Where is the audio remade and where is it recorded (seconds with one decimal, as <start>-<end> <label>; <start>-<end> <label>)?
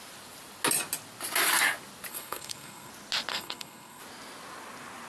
0.0-2.1 recorded; 2.1-2.9 remade; 2.9-3.3 recorded; 3.3-4.0 remade; 4.0-5.1 recorded